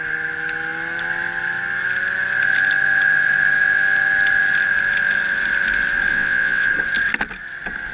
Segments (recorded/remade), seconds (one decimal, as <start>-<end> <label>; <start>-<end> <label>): 0.0-6.1 recorded; 6.1-6.7 remade; 6.7-7.9 recorded